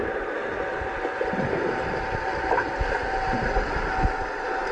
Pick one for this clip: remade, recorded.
recorded